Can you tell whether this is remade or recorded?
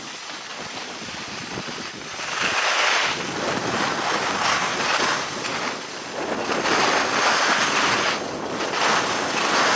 recorded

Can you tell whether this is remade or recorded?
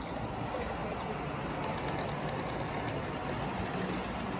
recorded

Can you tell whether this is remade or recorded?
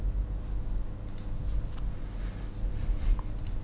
recorded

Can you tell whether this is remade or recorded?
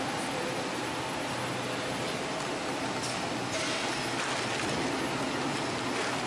recorded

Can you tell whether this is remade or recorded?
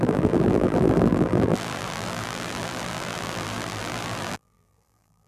remade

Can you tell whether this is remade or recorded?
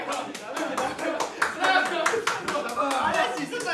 recorded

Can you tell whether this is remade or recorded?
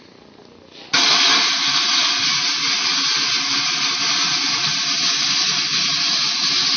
recorded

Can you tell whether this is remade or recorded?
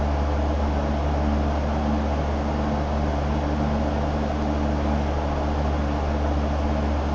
recorded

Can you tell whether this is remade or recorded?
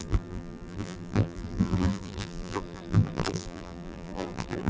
remade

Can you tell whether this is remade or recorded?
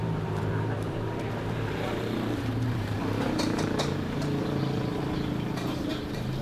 remade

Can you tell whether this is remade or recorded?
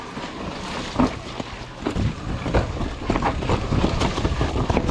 recorded